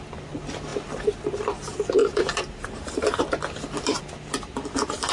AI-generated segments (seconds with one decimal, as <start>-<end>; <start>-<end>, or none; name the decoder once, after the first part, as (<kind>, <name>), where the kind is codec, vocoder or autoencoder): 2.0-4.0 (vocoder, BigVGAN v2)